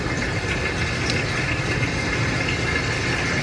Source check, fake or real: real